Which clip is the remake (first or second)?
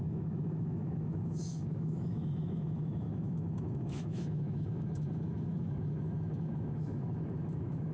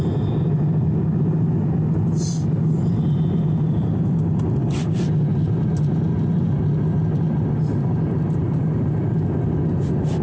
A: first